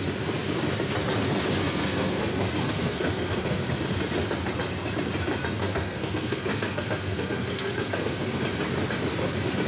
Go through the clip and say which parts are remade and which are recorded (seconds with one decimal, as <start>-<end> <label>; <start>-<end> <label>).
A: 0.0-1.6 recorded; 1.6-2.2 remade; 2.2-2.6 recorded; 2.6-3.6 remade; 3.6-5.6 recorded; 5.6-8.4 remade; 8.4-9.7 recorded